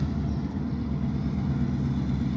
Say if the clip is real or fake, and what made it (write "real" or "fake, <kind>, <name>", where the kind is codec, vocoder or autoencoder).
real